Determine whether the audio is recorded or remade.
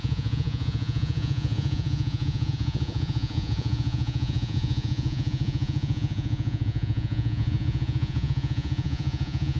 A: remade